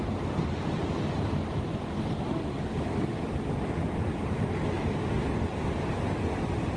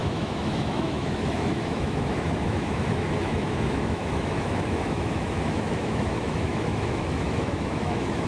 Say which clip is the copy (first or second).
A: second